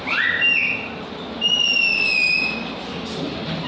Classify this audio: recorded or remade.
recorded